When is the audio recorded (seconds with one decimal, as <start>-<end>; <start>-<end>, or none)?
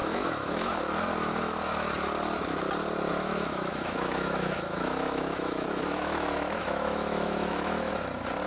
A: 0.8-3.1; 7.9-8.5